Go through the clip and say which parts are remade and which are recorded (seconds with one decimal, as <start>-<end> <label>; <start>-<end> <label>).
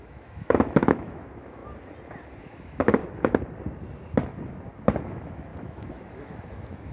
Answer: 0.0-1.6 remade; 1.6-2.4 recorded; 2.4-3.0 remade; 3.0-5.0 recorded; 5.0-6.9 remade